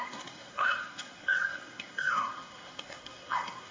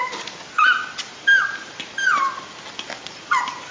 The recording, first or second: second